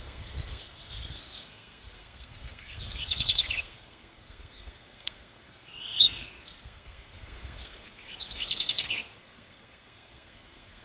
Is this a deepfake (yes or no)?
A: yes